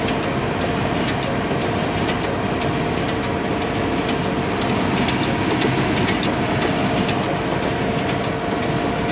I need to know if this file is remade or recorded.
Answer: recorded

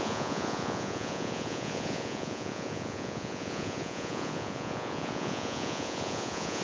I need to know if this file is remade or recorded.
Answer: remade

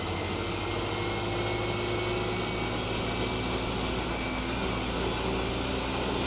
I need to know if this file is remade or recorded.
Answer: recorded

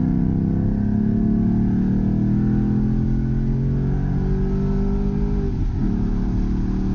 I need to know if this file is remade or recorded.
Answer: recorded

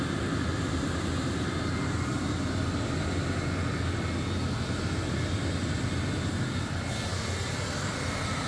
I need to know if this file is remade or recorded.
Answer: recorded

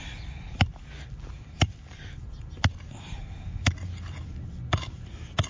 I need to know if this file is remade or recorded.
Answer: recorded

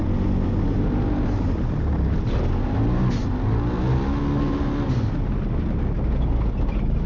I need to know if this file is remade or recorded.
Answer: recorded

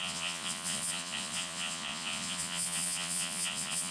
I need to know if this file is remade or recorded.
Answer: remade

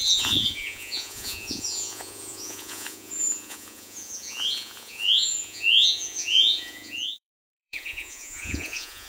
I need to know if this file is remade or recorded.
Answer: remade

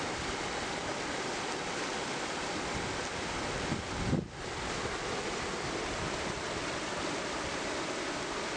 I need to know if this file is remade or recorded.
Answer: recorded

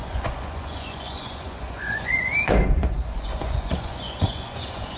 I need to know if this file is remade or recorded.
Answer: remade